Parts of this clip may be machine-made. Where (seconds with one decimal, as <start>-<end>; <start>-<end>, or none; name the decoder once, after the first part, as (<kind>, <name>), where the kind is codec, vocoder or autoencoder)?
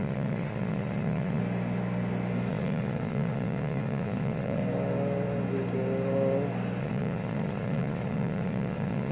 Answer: 0.0-1.4 (vocoder, Vocos); 2.5-4.6; 6.8-9.1